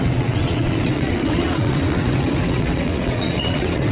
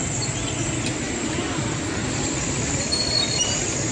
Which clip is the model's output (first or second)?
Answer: first